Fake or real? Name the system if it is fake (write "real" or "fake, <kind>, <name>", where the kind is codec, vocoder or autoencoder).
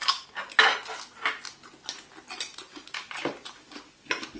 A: real